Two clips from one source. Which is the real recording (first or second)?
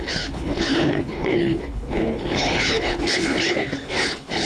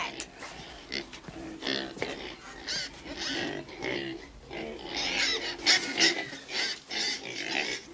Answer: second